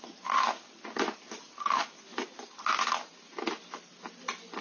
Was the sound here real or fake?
real